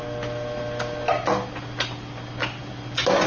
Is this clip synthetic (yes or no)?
no